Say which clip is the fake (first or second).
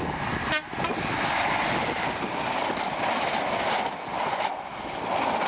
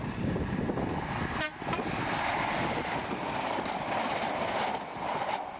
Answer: second